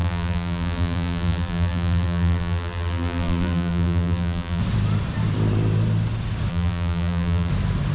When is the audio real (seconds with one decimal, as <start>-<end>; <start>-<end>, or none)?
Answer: 4.6-6.5; 7.5-7.9